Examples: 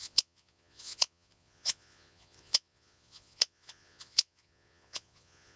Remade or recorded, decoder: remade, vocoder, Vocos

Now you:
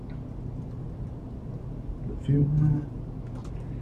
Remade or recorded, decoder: recorded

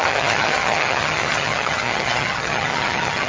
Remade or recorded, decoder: remade, vocoder, HiFi-GAN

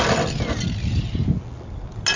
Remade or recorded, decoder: recorded